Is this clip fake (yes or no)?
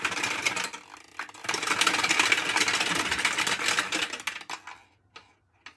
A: no